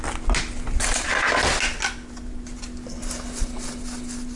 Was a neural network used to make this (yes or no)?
no